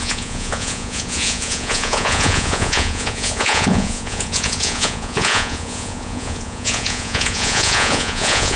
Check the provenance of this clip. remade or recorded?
remade